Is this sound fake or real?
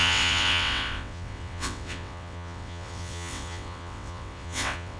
fake